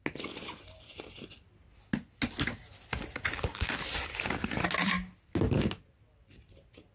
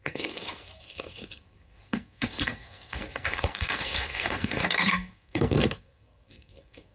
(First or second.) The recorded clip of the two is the first